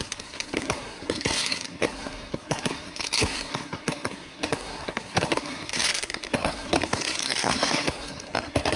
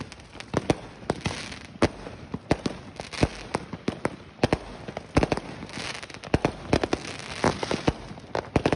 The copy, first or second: first